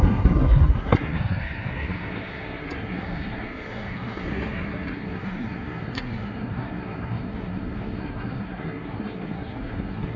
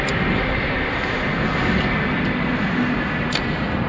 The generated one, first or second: first